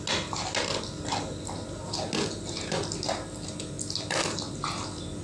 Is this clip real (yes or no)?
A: yes